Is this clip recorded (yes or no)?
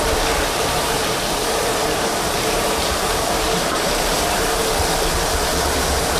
no